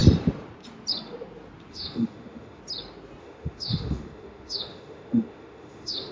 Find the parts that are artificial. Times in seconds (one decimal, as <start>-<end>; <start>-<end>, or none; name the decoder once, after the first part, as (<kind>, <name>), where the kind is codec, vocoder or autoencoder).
1.7-2.6 (autoencoder, DAC-VAE); 3.2-6.1